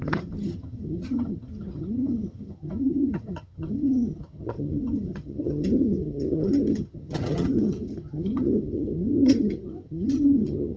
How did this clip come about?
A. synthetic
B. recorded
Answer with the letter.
A